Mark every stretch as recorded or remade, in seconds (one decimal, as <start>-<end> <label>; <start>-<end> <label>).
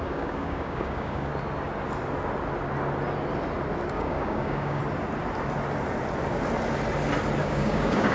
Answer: 0.0-1.3 remade; 1.3-3.9 recorded; 3.9-4.8 remade; 4.8-7.4 recorded; 7.4-8.1 remade